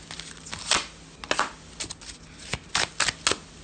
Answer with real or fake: real